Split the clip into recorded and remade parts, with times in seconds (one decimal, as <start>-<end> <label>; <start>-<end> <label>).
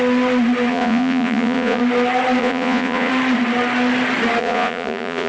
0.0-0.7 recorded; 0.7-1.8 remade; 1.8-2.4 recorded; 2.4-3.1 remade; 3.1-4.4 recorded; 4.4-5.3 remade